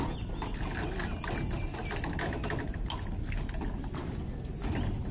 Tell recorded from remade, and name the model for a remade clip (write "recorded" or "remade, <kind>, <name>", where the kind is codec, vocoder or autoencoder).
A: recorded